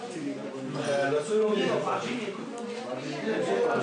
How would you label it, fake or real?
real